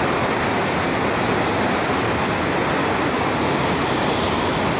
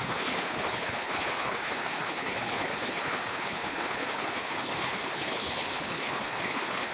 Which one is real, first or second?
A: first